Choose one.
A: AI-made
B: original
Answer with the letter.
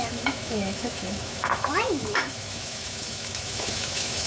A